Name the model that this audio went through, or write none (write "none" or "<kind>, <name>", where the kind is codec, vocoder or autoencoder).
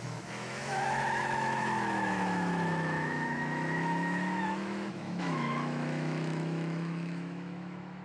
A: autoencoder, DAC-VAE